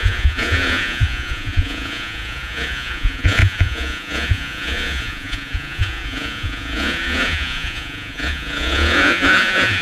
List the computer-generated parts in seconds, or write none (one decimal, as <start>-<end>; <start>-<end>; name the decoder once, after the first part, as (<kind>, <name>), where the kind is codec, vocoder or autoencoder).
0.0-9.8 (vocoder, Vocos)